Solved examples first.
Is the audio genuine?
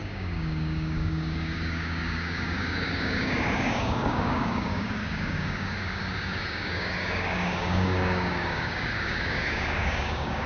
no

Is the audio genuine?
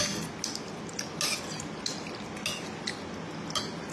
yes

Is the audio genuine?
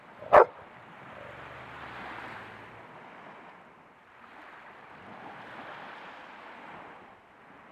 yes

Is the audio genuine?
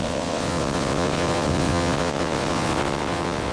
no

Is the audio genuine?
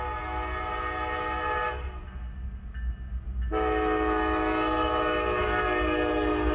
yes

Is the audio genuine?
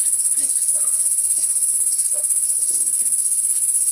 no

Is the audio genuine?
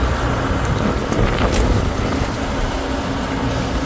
yes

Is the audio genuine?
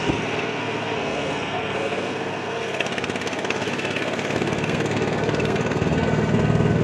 no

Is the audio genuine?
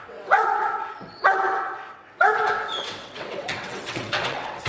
no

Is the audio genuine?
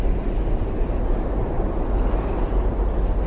yes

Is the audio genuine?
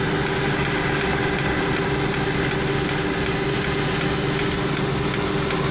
yes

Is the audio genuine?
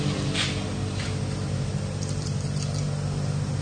yes